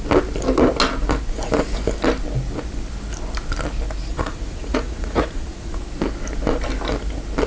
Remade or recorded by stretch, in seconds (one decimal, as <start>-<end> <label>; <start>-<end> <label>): 0.0-4.1 recorded; 4.1-5.8 remade; 5.8-7.5 recorded